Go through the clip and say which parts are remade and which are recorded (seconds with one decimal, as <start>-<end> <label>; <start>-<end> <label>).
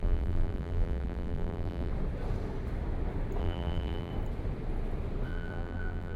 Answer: 0.0-1.9 remade; 1.9-3.4 recorded; 3.4-4.1 remade; 4.1-5.3 recorded; 5.3-6.2 remade